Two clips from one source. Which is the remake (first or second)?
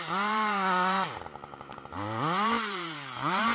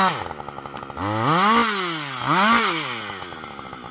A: first